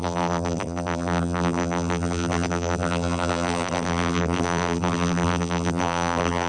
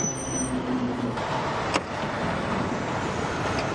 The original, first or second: second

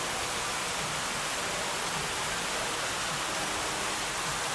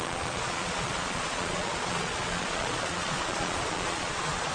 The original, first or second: first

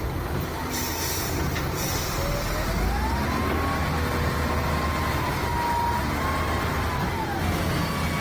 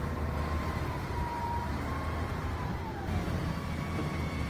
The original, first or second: first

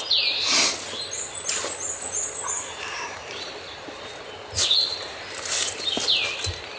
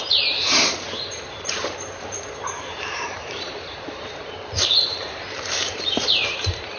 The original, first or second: first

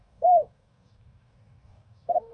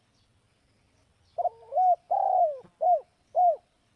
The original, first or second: second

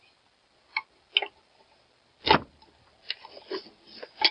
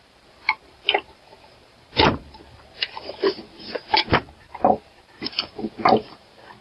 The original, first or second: first